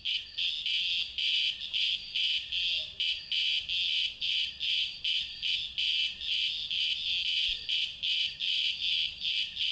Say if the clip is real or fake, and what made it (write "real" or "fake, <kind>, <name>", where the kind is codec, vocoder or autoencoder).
real